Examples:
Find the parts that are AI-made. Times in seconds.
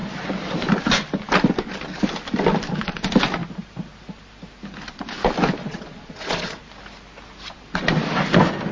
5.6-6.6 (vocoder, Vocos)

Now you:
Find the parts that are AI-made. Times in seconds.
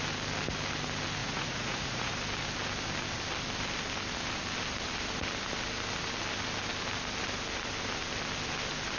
1.2-2.1 (vocoder, Vocos)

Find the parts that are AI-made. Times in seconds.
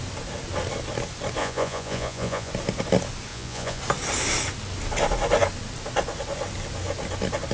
1.4-2.5 (vocoder, Vocos); 3.3-3.8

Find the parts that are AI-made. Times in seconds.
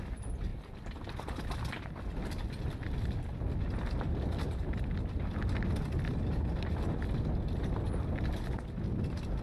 none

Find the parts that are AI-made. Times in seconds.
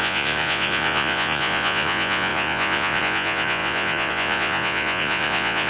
0.0-5.7 (vocoder, Vocos)